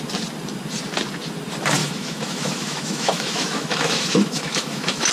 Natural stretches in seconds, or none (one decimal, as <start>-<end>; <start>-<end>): 0.0-1.8